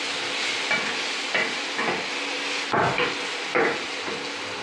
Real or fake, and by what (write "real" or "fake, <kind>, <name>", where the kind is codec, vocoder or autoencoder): real